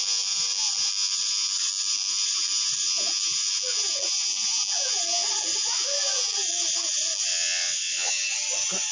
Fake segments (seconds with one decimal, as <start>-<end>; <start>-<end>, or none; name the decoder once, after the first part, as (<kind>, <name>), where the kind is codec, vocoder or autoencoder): 7.3-8.1 (vocoder, WaveNeXt)